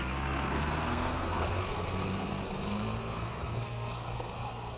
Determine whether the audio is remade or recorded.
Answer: remade